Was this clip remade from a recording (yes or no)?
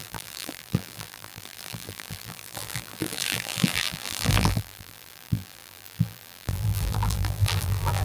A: yes